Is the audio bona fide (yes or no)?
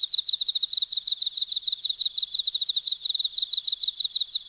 yes